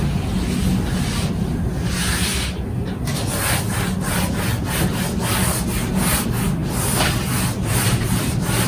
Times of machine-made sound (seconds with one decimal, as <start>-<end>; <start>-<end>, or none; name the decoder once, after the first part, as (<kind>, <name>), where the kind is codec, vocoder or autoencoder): none